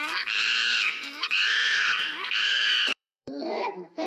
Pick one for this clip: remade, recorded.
remade